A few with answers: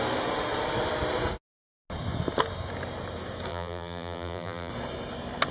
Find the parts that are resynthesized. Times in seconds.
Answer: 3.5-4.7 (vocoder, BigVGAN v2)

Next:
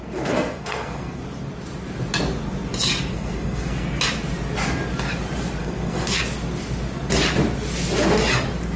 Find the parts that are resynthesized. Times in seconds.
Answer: 0.0-1.2 (codec, SNAC); 3.1-4.0; 5.6-6.2

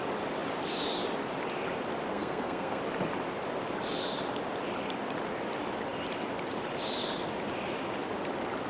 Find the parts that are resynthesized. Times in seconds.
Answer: 2.1-2.8 (codec, SNAC)

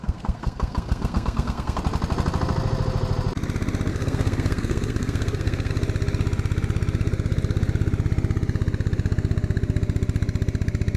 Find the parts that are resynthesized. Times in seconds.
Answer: 0.0-1.8 (codec, SNAC); 3.9-5.7

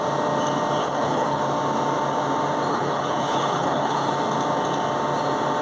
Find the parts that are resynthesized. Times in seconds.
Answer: 0.8-1.4 (codec, HILCodec); 2.7-4.1